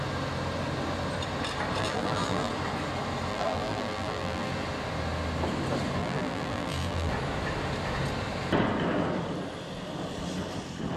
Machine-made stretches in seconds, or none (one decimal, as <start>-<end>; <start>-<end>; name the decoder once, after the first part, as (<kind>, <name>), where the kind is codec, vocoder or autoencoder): 1.8-2.5 (vocoder, BigVGAN v2); 3.3-4.5; 6.0-7.1